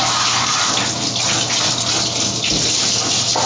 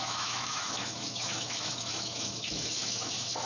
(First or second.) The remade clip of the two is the second